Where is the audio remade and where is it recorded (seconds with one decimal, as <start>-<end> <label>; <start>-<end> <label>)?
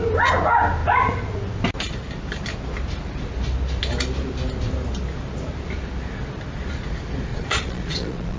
0.0-7.3 recorded; 7.3-8.4 remade